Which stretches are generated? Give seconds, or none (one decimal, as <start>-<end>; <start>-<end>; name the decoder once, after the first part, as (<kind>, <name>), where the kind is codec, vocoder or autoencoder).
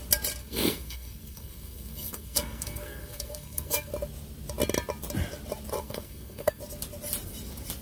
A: 0.4-3.9 (codec, SNAC); 5.8-6.6